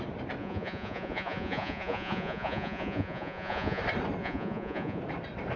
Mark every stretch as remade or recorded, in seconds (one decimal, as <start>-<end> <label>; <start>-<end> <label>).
0.0-0.4 recorded; 0.4-3.8 remade; 3.8-4.2 recorded; 4.2-5.0 remade; 5.0-5.6 recorded